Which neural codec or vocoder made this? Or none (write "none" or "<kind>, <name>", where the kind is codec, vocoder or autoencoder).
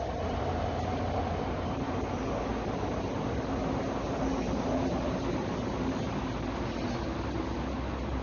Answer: none